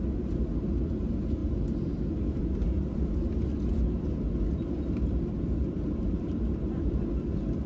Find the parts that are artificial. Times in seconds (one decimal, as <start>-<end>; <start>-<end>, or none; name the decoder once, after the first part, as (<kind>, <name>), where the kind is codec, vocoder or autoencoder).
none